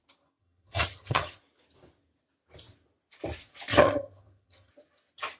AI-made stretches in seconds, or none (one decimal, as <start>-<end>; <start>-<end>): 0.4-1.4; 3.7-4.7